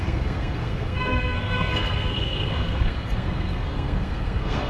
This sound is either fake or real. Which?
fake